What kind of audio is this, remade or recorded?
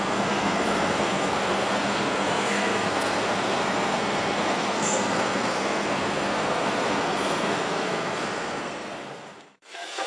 remade